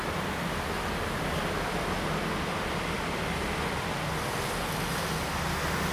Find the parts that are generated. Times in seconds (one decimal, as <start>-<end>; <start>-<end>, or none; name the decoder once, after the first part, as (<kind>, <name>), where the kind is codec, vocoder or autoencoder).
none